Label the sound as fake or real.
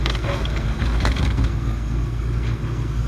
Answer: fake